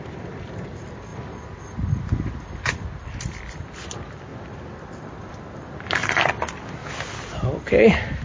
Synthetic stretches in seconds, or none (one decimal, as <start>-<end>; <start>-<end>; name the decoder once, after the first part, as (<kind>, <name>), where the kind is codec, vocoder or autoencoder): 0.0-1.1 (vocoder, BigVGAN v2); 2.7-4.3; 5.0-6.8